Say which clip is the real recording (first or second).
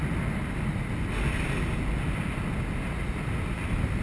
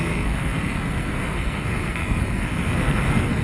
first